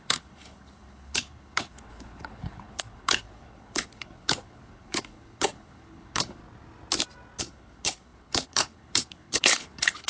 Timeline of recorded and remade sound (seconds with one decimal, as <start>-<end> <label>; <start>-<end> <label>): 0.0-6.4 remade; 6.4-7.4 recorded; 7.4-10.1 remade